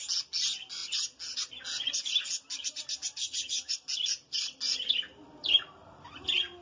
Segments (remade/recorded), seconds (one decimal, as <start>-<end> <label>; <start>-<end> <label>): 0.0-3.2 recorded; 3.2-3.7 remade; 3.7-6.6 recorded